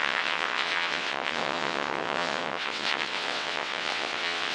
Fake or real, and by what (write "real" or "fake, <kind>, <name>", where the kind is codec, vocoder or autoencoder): fake, vocoder, WaveNeXt